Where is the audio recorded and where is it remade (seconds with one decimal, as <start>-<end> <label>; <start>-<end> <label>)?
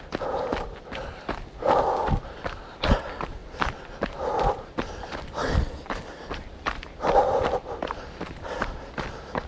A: 0.0-9.5 recorded